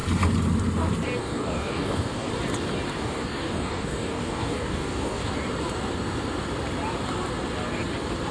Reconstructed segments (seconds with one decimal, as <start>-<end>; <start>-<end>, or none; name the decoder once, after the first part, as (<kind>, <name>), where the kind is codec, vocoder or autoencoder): 1.2-2.3 (codec, DAC); 2.9-5.3